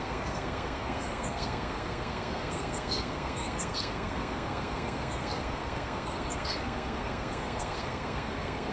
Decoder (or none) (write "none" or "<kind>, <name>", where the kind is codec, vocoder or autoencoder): codec, SNAC